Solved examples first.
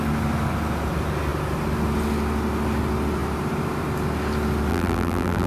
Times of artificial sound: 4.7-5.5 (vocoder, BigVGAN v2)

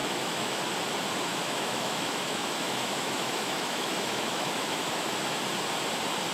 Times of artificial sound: 0.0-0.6 (autoencoder, DAC-VAE); 1.3-5.1

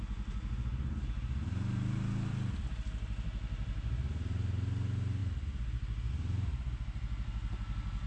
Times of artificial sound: none

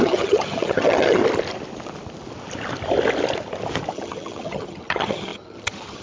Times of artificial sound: 0.0-1.2 (vocoder, HiFi-GAN); 3.9-6.0